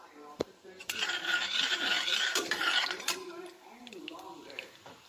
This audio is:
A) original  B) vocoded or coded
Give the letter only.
B